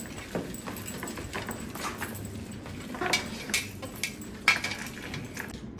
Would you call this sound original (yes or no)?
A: yes